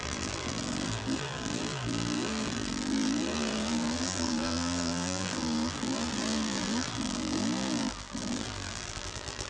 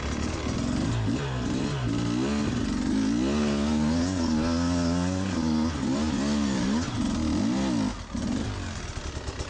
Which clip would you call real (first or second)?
second